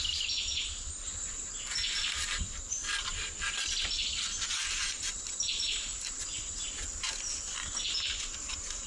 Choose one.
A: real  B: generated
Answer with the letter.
B